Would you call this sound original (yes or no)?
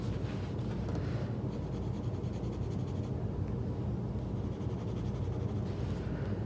yes